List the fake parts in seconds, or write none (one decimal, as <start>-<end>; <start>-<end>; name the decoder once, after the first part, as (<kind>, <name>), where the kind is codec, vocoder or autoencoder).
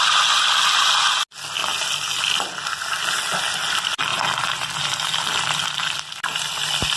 none